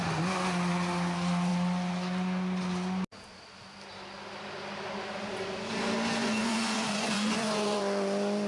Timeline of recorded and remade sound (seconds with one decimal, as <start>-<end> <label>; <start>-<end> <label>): 0.0-6.2 recorded; 6.2-7.8 remade; 7.8-8.5 recorded